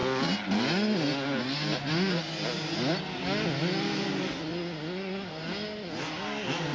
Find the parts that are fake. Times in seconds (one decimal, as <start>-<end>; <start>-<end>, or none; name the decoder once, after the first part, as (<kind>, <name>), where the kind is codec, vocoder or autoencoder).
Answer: none